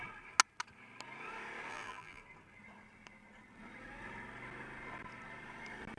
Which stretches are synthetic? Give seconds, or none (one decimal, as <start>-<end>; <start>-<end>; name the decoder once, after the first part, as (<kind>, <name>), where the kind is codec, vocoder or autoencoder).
1.7-2.2 (vocoder, BigVGAN v2)